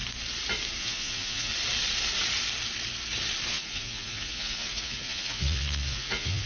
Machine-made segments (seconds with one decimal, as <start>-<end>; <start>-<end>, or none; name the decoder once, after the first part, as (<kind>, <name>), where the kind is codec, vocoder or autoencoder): 0.8-1.5 (vocoder, Vocos); 3.5-6.5